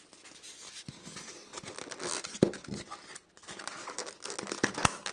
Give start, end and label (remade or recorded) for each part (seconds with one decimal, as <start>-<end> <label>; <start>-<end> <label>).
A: 0.0-5.1 recorded

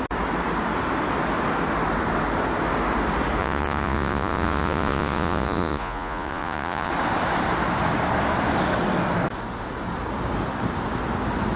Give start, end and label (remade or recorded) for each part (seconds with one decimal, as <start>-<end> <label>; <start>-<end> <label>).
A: 0.0-3.4 recorded; 3.4-6.9 remade; 6.9-11.6 recorded

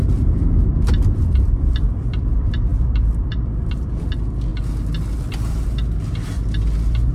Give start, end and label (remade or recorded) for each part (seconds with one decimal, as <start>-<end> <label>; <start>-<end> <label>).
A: 0.0-4.5 remade; 4.5-5.5 recorded; 5.5-6.4 remade; 6.4-7.1 recorded

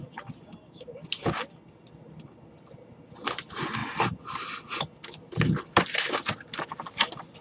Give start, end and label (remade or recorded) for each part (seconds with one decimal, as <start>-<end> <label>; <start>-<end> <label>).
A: 0.0-7.4 recorded

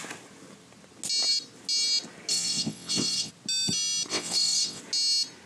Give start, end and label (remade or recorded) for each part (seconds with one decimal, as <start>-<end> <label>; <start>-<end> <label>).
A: 0.0-2.3 recorded; 2.3-3.3 remade; 3.3-4.1 recorded; 4.1-4.8 remade; 4.8-5.5 recorded

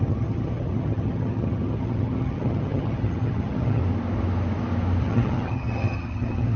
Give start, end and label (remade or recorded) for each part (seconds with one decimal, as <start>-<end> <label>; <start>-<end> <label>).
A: 0.0-3.8 remade; 3.8-5.0 recorded; 5.0-6.6 remade

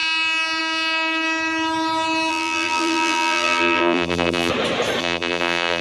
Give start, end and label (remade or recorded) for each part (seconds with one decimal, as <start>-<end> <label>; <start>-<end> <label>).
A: 0.0-2.3 recorded; 2.3-4.5 remade; 4.5-5.0 recorded; 5.0-5.8 remade

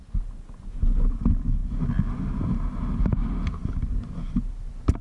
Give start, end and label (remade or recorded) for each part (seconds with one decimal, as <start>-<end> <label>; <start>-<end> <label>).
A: 0.0-5.0 recorded